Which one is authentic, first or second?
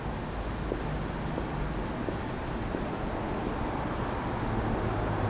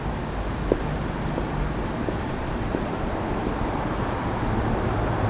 first